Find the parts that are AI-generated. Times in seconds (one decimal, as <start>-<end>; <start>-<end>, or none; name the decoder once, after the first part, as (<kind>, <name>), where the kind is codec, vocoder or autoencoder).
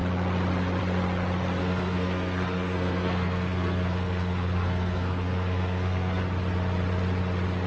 1.6-6.2 (codec, SNAC)